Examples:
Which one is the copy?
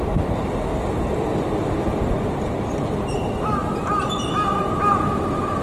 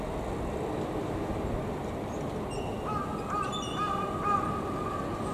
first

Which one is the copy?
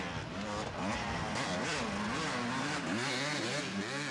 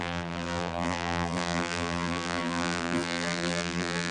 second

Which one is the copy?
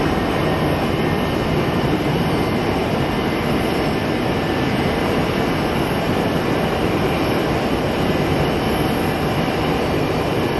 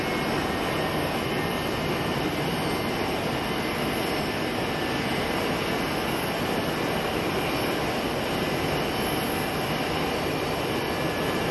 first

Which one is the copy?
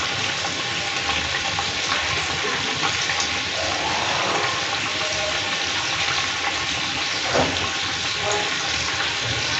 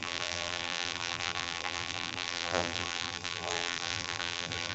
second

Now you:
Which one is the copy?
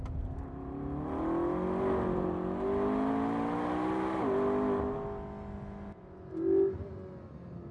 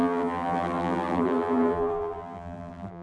second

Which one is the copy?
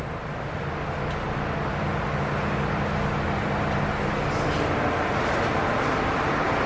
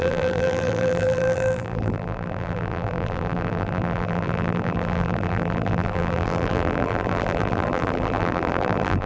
second